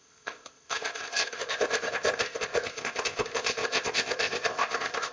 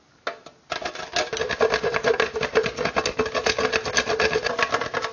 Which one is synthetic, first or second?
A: first